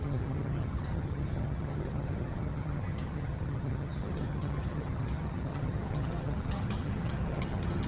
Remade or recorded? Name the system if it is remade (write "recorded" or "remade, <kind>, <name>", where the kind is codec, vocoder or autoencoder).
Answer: remade, vocoder, HiFi-GAN